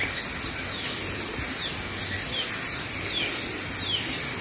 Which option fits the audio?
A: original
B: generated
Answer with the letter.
A